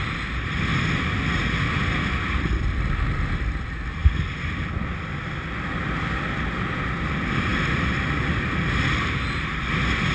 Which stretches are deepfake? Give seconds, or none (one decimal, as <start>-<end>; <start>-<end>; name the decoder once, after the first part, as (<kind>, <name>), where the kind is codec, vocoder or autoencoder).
none